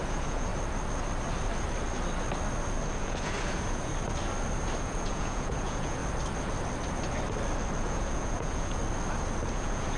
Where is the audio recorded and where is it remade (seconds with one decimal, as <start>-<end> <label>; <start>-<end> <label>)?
0.0-0.5 remade; 0.5-3.0 recorded; 3.0-3.9 remade; 3.9-4.8 recorded; 4.8-6.0 remade; 6.0-7.8 recorded; 7.8-8.8 remade; 8.8-9.5 recorded; 9.5-10.0 remade